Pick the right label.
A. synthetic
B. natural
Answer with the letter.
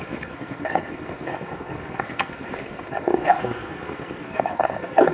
A